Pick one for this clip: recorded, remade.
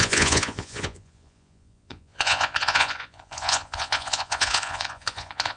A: remade